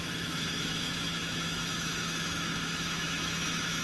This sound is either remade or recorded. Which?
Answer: remade